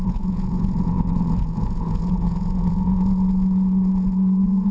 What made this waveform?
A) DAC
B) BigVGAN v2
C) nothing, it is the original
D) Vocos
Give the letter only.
D